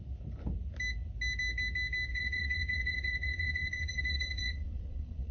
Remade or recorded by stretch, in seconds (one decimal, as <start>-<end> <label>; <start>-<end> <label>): 0.0-2.1 recorded; 2.1-5.3 remade